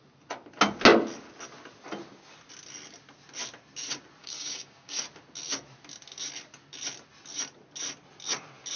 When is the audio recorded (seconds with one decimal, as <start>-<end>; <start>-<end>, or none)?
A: 0.0-4.2; 5.0-8.8